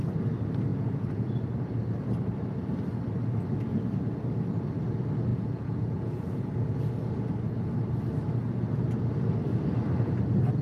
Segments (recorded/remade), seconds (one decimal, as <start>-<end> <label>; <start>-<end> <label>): 0.0-0.7 recorded; 0.7-1.3 remade; 1.3-5.3 recorded; 5.3-6.9 remade; 6.9-10.6 recorded